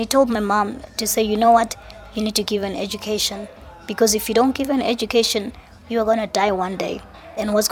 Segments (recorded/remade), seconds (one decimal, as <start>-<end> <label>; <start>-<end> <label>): 0.0-5.8 remade; 5.8-7.7 recorded